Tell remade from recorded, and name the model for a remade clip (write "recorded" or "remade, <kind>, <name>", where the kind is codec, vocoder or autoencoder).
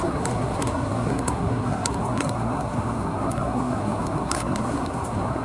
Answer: remade, codec, SNAC